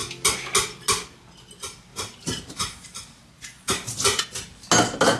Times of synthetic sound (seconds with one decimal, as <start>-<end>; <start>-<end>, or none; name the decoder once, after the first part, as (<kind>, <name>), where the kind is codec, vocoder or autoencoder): 1.9-4.2 (vocoder, BigVGAN v2)